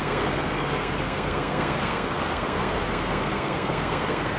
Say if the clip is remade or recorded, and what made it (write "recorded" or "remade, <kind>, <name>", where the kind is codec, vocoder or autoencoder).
remade, codec, SNAC